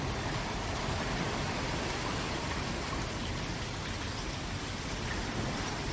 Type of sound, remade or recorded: recorded